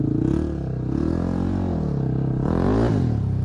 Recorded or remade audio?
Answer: recorded